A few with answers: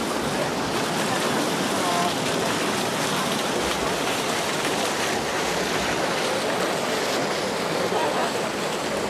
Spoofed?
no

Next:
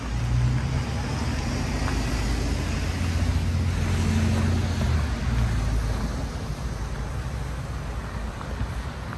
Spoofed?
no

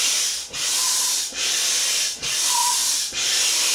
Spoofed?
yes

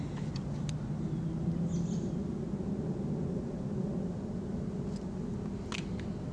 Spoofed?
no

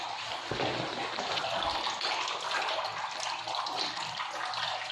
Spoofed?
no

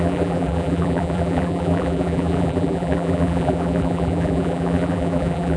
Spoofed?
yes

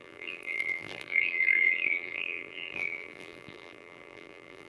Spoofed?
yes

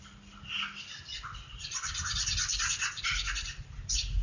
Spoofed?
no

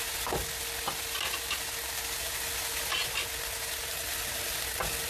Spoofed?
no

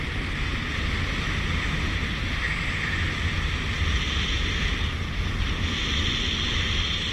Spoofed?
no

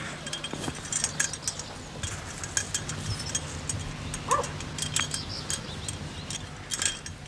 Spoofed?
no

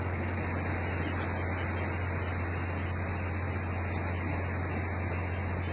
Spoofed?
no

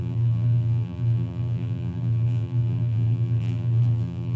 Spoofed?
yes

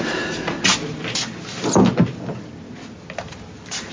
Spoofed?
no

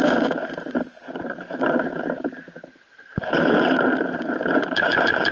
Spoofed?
yes